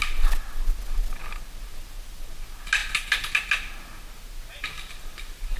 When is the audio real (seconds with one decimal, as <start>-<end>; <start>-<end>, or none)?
0.0-5.6